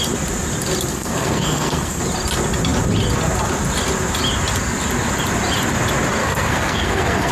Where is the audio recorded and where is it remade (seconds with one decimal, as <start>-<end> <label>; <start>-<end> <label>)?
0.0-0.9 recorded; 0.9-2.0 remade; 2.0-6.2 recorded; 6.2-7.3 remade